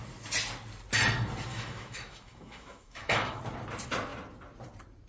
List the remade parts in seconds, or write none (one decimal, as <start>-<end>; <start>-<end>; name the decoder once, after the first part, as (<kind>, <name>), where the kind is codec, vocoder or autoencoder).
1.5-3.4 (autoencoder, DAC-VAE)